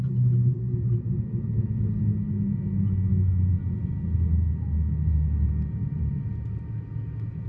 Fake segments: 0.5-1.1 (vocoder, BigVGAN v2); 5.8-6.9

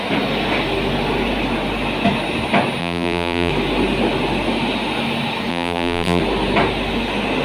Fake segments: 2.8-3.5 (vocoder, BigVGAN v2); 5.5-6.2

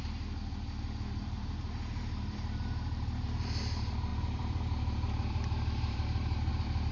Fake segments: 0.0-6.9 (vocoder, BigVGAN v2)

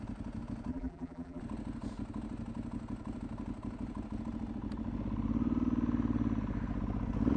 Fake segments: 0.7-1.4 (vocoder, BigVGAN v2)

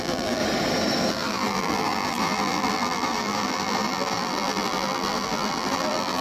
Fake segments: 0.0-0.4 (vocoder, BigVGAN v2); 1.1-6.2

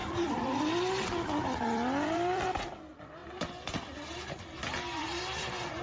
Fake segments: 0.0-0.7 (vocoder, BigVGAN v2); 1.4-2.6

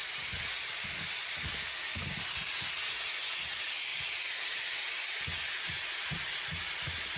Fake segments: none